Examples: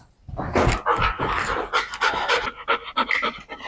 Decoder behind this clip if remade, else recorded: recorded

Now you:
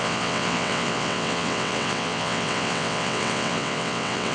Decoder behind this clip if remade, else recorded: remade, vocoder, WaveNeXt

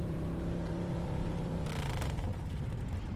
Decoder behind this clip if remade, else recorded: remade, vocoder, BigVGAN v2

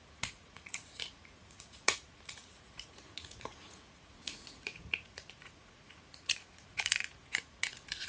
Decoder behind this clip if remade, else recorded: remade, vocoder, Vocos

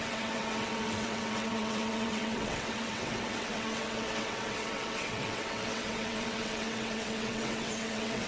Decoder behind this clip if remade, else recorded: remade, vocoder, WaveNeXt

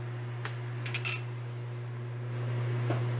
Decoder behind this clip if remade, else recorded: recorded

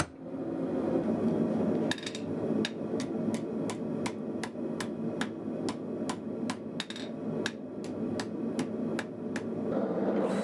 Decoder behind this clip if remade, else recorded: recorded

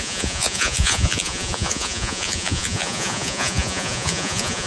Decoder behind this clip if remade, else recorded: remade, vocoder, Vocos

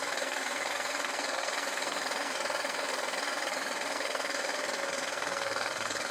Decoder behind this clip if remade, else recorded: remade, codec, SNAC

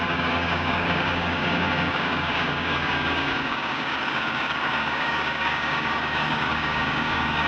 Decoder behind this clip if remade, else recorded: remade, codec, DAC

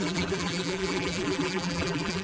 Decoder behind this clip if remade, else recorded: remade, vocoder, BigVGAN v2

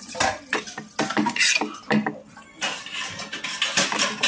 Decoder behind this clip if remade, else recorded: recorded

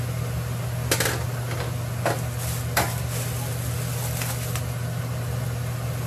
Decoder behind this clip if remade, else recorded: recorded